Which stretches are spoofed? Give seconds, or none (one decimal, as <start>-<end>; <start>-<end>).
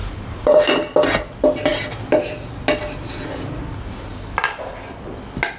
0.0-0.8; 1.7-2.6